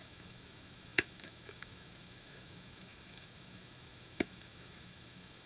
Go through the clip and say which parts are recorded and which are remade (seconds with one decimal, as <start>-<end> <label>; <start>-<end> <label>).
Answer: 0.0-5.5 remade